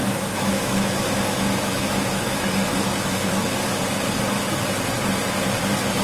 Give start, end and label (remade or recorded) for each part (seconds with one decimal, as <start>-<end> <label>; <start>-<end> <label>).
0.0-3.6 remade; 3.6-6.0 recorded